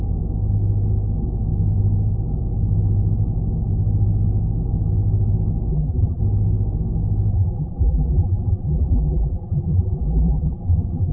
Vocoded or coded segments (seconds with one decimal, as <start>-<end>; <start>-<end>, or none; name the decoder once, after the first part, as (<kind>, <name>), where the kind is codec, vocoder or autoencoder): 5.7-6.2 (vocoder, BigVGAN v2); 7.3-11.1